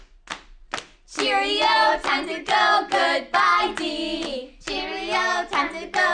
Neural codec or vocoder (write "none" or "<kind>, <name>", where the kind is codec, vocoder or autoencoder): none